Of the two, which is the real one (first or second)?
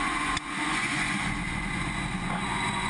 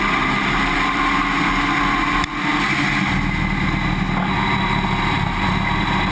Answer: second